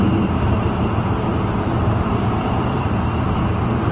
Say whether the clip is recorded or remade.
recorded